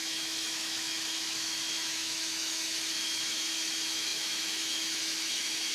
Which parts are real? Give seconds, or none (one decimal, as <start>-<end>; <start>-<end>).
none